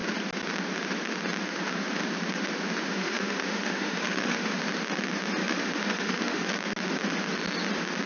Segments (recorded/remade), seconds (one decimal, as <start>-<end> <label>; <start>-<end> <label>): 0.0-2.9 recorded; 2.9-4.5 remade; 4.5-5.4 recorded; 5.4-6.6 remade; 6.6-8.1 recorded

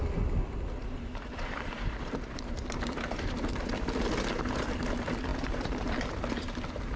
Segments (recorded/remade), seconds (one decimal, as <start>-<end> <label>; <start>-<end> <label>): 0.0-0.8 recorded; 0.8-3.7 remade; 3.7-5.3 recorded; 5.3-5.9 remade; 5.9-7.0 recorded

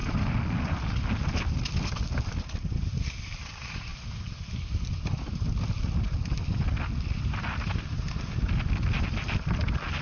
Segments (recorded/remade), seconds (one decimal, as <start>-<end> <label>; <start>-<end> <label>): 0.0-10.0 recorded

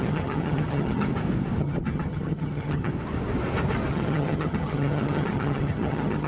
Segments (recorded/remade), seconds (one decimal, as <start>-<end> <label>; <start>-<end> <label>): 0.0-1.1 remade; 1.1-1.6 recorded; 1.6-2.9 remade; 2.9-3.9 recorded; 3.9-6.3 remade

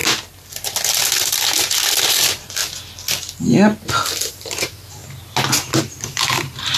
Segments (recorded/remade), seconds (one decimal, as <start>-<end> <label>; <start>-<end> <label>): 0.0-2.1 recorded; 2.1-2.6 remade; 2.6-4.3 recorded; 4.3-5.0 remade; 5.0-5.8 recorded; 5.8-6.8 remade

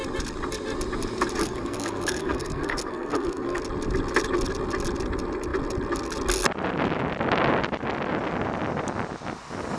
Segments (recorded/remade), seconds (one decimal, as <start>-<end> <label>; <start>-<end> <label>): 0.0-1.4 recorded; 1.4-3.6 remade; 3.6-9.8 recorded

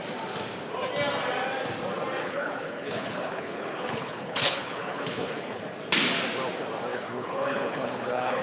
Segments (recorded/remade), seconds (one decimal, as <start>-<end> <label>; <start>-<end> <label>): 0.0-2.2 recorded; 2.2-5.6 remade; 5.6-6.9 recorded; 6.9-8.4 remade